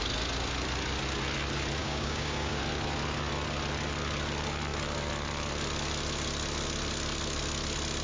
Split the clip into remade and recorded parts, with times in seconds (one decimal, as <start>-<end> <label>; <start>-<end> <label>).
0.0-1.8 recorded; 1.8-2.6 remade; 2.6-8.0 recorded